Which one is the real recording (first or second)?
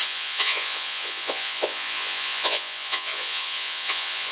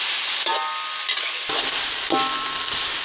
second